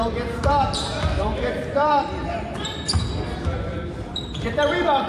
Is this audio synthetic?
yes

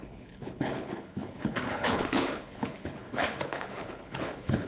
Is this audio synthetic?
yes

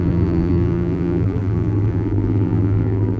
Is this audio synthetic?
yes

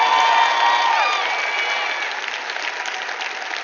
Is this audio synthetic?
no